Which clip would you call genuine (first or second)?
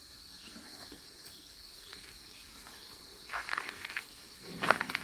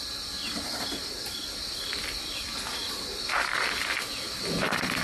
second